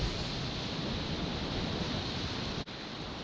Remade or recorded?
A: recorded